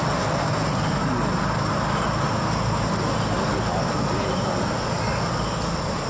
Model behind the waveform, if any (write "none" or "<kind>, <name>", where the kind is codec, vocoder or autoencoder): none